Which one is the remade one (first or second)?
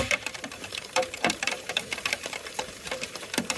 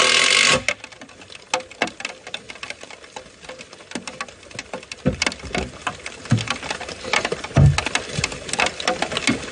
first